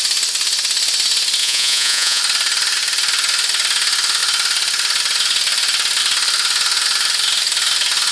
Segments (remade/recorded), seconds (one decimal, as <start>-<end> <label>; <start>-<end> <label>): 0.0-1.4 recorded; 1.4-2.2 remade; 2.2-8.1 recorded